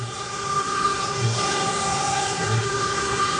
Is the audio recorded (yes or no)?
no